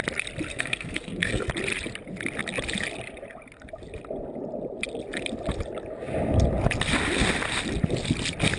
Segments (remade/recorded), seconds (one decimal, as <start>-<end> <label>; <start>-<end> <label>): 0.0-0.5 recorded; 0.5-1.5 remade; 1.5-8.6 recorded